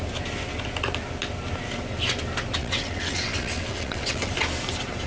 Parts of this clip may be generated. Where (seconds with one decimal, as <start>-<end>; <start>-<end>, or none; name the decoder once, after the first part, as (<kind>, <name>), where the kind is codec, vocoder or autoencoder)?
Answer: 2.6-4.3 (vocoder, WaveNeXt)